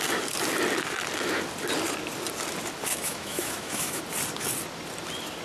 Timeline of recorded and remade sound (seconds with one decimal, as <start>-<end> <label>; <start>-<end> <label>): 0.0-2.9 recorded; 2.9-4.0 remade; 4.0-5.4 recorded